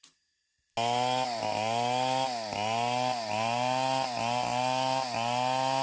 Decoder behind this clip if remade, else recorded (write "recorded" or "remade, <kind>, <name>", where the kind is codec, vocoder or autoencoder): recorded